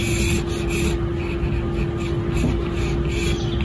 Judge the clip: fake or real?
real